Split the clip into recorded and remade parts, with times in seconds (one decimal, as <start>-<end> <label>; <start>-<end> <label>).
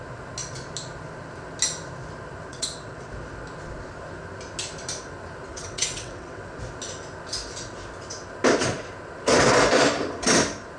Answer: 0.0-2.5 recorded; 2.5-3.1 remade; 3.1-5.5 recorded; 5.5-6.6 remade; 6.6-10.8 recorded